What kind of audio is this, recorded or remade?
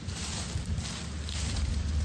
recorded